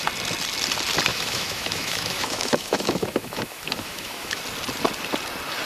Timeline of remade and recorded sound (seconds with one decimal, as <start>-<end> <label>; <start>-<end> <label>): 0.0-1.1 recorded; 1.1-4.4 remade; 4.4-5.7 recorded